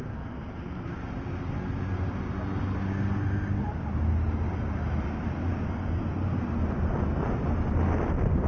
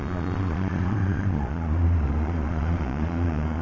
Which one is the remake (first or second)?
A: second